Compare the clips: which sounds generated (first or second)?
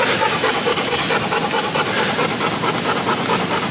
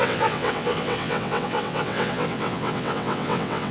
second